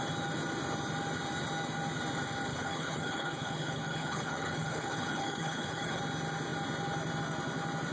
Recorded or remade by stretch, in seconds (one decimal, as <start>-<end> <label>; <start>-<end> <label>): 0.0-2.5 recorded; 2.5-6.0 remade; 6.0-7.9 recorded